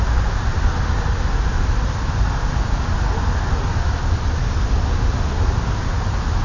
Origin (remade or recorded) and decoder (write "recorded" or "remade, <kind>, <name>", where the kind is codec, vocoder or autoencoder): recorded